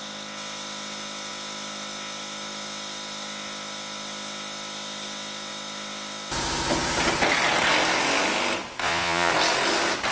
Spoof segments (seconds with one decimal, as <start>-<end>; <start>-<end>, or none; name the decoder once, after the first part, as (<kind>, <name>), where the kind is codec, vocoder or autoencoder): 8.8-9.3 (vocoder, Vocos)